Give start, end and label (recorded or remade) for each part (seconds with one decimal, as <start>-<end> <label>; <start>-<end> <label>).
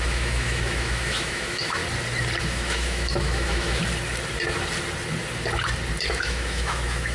0.0-1.8 remade; 1.8-2.4 recorded; 2.4-3.8 remade; 3.8-6.1 recorded; 6.1-7.1 remade